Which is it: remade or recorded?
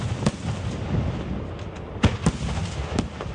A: recorded